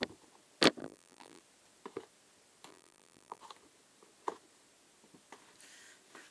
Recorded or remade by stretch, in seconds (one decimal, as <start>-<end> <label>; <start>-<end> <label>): 0.0-0.8 recorded; 0.8-1.4 remade; 1.4-2.7 recorded; 2.7-3.4 remade; 3.4-6.3 recorded